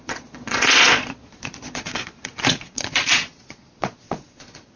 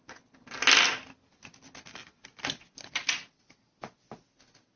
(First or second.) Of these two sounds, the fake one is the first